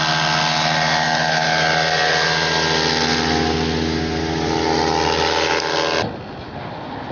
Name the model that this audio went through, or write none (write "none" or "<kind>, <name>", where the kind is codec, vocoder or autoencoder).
none